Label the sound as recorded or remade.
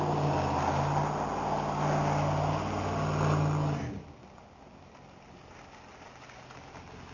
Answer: recorded